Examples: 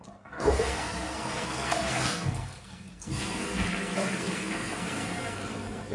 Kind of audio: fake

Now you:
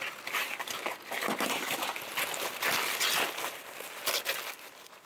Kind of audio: real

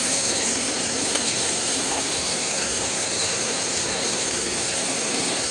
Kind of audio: fake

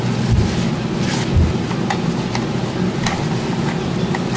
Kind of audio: real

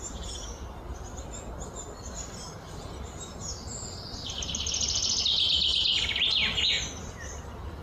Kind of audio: real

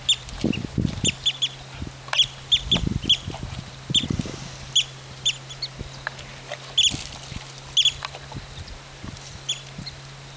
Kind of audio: real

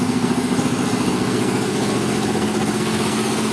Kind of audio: fake